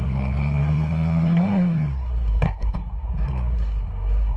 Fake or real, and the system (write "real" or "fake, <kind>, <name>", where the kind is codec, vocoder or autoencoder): fake, codec, SNAC